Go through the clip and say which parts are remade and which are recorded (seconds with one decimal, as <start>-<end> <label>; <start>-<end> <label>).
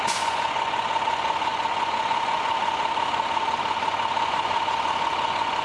0.0-5.6 remade